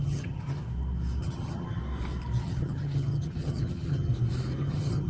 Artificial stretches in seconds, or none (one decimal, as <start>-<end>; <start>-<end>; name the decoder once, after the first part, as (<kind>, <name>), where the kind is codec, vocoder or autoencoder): 0.0-0.6 (vocoder, HiFi-GAN); 1.2-1.8; 2.4-4.1; 4.6-5.1